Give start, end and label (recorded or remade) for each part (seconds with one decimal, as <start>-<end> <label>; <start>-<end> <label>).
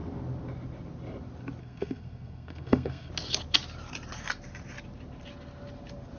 0.0-1.6 recorded; 1.6-3.1 remade; 3.1-6.2 recorded